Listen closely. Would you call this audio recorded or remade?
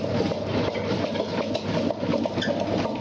recorded